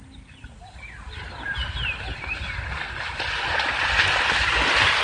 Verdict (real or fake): real